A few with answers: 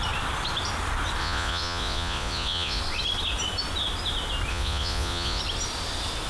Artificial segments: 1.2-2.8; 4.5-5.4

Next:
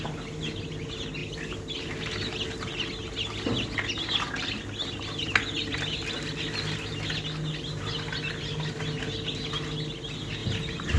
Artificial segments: none